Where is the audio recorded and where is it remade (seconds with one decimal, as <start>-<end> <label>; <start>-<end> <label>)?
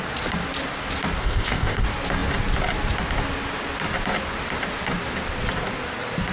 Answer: 0.0-1.2 recorded; 1.2-1.8 remade; 1.8-6.3 recorded